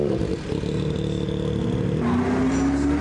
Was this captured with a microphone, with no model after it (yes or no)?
yes